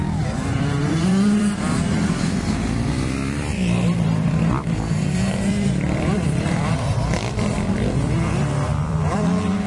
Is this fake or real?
fake